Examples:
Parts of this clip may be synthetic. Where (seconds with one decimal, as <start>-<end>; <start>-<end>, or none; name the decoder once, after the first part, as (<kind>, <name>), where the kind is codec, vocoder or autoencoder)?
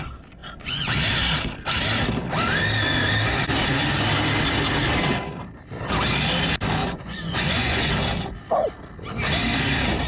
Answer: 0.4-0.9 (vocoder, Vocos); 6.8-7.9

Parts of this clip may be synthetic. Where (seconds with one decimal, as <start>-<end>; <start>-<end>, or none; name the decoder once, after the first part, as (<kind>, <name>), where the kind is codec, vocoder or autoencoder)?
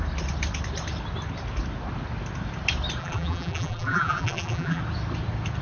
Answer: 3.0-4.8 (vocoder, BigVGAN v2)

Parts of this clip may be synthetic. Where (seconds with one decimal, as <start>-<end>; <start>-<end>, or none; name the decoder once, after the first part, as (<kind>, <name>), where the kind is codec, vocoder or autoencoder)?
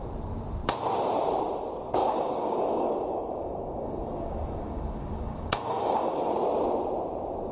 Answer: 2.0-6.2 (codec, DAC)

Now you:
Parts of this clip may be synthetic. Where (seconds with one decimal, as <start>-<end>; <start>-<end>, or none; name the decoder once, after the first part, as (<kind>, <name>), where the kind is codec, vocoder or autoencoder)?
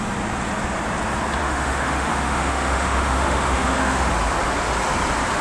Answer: 1.4-4.1 (autoencoder, DAC-VAE)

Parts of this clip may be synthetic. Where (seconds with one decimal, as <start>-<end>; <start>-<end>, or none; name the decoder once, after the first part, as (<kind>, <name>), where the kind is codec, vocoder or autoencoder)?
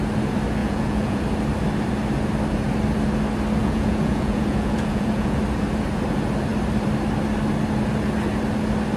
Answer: 0.6-1.2 (vocoder, Vocos); 3.6-5.4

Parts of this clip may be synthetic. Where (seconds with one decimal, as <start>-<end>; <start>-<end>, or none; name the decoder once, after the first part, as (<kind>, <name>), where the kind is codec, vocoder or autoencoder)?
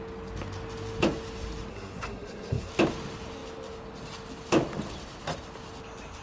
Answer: 1.7-2.7 (codec, SNAC)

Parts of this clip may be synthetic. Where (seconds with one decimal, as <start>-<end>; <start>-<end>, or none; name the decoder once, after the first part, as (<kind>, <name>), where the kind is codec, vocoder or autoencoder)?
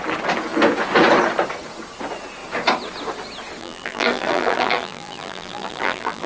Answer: 3.6-6.3 (vocoder, BigVGAN v2)